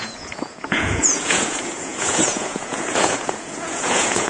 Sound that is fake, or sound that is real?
fake